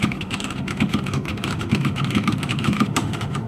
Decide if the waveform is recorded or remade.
remade